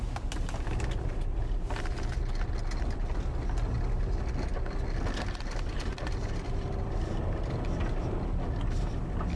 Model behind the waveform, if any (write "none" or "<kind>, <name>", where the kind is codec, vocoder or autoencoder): none